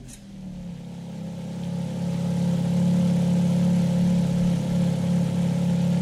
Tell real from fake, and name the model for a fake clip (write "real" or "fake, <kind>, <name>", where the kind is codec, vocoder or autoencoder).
real